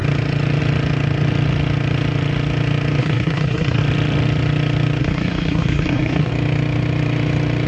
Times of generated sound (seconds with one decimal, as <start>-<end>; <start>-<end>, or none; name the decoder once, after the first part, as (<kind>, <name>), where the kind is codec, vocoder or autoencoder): 3.0-3.8 (codec, SNAC); 5.0-6.3